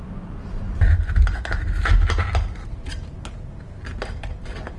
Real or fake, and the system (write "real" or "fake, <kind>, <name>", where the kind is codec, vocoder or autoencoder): real